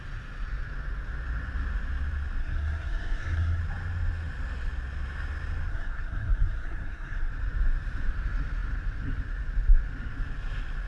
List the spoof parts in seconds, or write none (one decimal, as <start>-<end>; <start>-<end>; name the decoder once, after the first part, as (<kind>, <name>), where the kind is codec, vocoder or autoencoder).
2.4-3.6 (codec, SNAC); 5.7-7.3